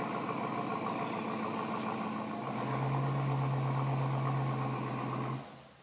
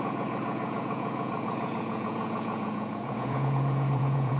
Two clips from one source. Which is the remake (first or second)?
second